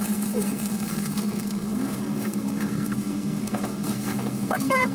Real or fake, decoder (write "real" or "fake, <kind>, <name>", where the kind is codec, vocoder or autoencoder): fake, codec, SNAC